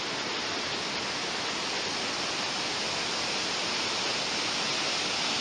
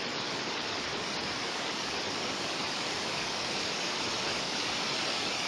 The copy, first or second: second